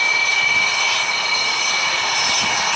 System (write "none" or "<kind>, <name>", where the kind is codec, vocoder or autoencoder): none